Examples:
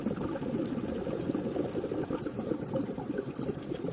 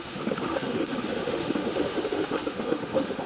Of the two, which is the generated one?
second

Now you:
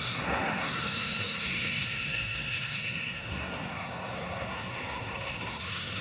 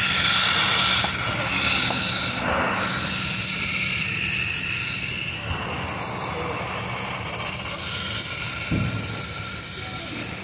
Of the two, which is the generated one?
first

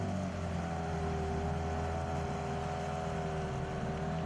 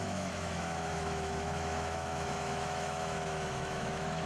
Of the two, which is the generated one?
second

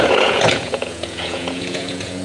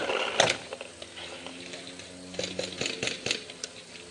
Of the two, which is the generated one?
first